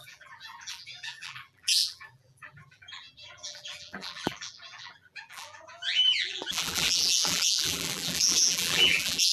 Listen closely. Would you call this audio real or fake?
fake